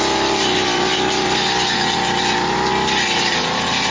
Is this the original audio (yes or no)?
yes